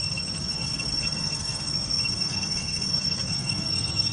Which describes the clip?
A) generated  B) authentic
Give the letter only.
A